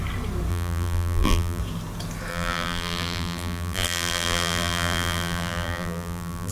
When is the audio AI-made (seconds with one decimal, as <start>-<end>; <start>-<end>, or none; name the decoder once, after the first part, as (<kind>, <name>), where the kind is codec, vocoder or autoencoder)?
0.5-1.6 (vocoder, BigVGAN v2); 2.3-6.5